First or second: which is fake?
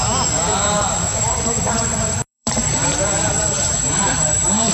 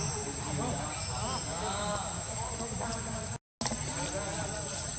first